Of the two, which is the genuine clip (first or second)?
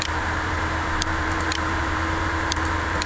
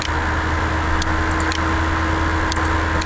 second